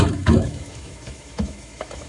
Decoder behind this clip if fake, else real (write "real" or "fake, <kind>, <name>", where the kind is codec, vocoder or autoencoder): fake, autoencoder, DAC-VAE